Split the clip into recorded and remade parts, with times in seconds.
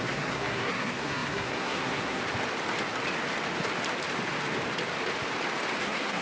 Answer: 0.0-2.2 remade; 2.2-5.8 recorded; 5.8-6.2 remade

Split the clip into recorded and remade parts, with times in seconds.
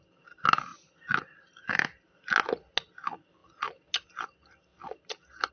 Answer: 0.0-0.7 recorded; 0.7-1.4 remade; 1.4-4.7 recorded; 4.7-5.5 remade